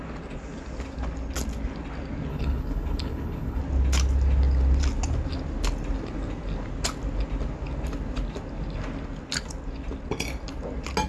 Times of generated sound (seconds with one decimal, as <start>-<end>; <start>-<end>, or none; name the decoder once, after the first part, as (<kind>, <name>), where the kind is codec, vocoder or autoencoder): 2.3-3.6 (codec, HILCodec)